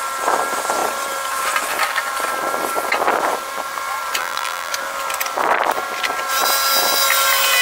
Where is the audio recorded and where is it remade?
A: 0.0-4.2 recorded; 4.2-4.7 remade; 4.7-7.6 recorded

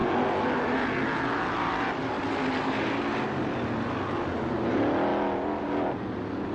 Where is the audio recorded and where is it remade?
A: 0.0-6.5 recorded

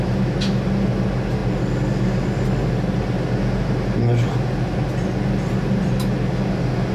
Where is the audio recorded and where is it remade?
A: 0.0-6.9 recorded

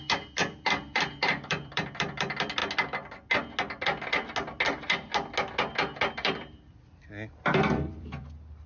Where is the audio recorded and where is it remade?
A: 0.0-2.6 remade; 2.6-6.1 recorded; 6.1-8.7 remade

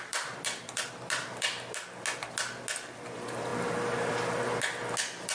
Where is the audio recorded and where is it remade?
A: 0.0-5.3 recorded

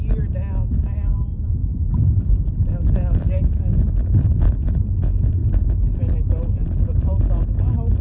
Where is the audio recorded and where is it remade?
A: 0.0-1.6 recorded; 1.6-2.7 remade; 2.7-5.4 recorded; 5.4-6.0 remade; 6.0-6.6 recorded; 6.6-7.2 remade; 7.2-8.0 recorded

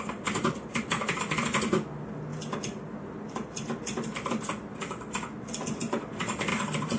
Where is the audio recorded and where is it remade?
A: 0.0-7.0 recorded

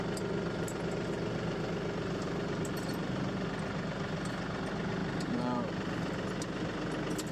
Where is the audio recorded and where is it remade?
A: 0.0-5.0 recorded; 5.0-5.6 remade; 5.6-7.3 recorded